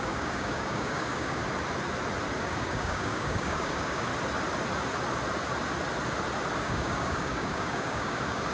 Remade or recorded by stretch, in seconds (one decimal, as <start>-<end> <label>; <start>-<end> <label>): 0.0-1.4 remade; 1.4-2.4 recorded; 2.4-4.1 remade; 4.1-6.6 recorded; 6.6-8.5 remade